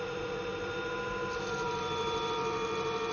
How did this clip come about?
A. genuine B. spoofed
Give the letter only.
A